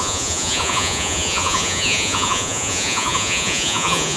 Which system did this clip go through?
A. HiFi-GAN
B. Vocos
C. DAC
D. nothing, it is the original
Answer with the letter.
B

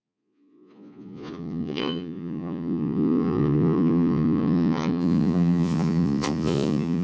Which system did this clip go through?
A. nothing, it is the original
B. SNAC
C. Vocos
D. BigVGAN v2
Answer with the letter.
C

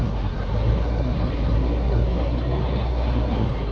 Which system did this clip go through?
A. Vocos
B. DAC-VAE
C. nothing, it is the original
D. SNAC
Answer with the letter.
D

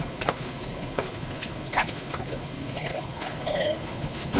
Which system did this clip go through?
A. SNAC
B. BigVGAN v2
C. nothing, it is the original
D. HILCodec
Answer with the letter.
D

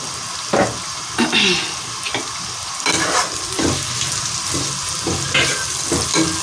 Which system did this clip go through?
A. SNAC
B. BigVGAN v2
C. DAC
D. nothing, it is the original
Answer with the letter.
D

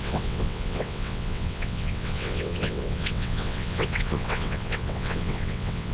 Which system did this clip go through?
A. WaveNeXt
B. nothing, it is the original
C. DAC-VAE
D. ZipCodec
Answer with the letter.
A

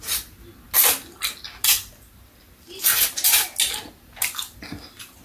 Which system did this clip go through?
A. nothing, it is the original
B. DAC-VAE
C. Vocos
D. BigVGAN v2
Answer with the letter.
A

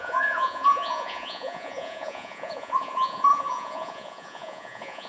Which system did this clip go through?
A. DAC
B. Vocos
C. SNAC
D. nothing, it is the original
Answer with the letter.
B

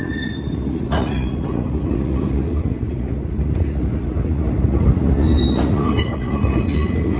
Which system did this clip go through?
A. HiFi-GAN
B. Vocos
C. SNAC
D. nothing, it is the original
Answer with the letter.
B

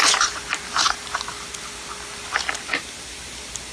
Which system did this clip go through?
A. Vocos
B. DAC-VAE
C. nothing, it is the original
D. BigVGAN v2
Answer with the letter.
C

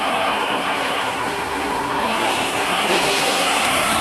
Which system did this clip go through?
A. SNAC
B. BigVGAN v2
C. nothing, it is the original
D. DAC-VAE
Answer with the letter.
A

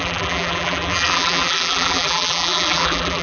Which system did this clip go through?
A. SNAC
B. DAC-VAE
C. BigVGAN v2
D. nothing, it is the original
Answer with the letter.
C